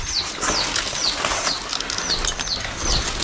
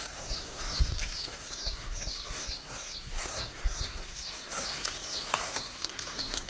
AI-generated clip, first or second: second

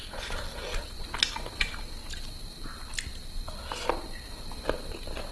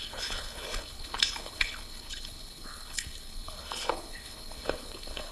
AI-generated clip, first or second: second